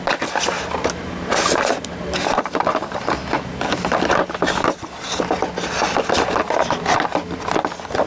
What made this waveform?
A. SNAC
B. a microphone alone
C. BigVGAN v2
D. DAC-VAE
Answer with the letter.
B